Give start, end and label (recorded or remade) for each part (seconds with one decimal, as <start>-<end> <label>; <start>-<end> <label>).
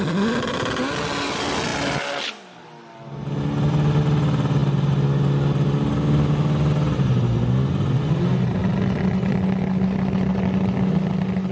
0.0-11.5 recorded